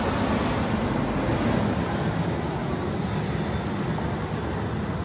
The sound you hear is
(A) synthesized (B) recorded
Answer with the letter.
B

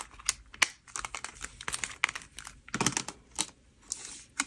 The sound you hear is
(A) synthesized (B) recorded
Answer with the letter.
B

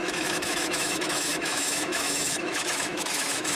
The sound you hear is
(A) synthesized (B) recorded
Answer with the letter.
A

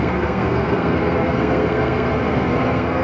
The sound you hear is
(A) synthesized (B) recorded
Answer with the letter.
A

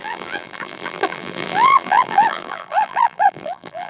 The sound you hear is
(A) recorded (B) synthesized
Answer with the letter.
B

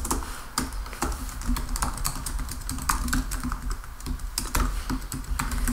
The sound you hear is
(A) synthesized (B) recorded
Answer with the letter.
B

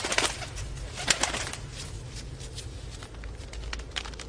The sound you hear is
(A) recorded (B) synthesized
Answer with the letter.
A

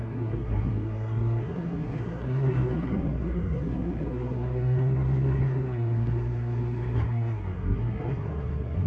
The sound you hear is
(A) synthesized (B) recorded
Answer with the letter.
A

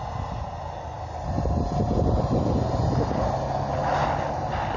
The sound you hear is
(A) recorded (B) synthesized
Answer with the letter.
A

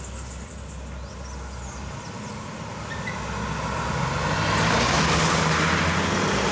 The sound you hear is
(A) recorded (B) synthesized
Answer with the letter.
A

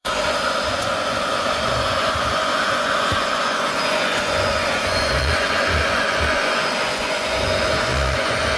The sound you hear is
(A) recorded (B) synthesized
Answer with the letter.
B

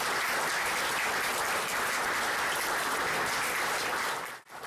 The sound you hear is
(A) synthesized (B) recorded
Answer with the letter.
B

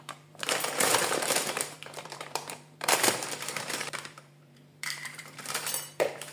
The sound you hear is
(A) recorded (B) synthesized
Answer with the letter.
B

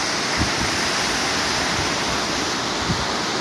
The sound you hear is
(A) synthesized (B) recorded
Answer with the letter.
B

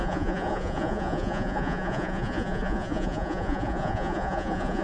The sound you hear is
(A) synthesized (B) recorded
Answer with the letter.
A